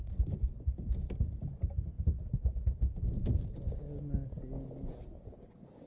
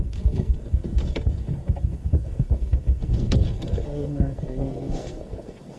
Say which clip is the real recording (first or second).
first